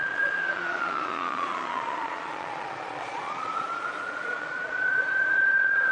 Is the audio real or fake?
fake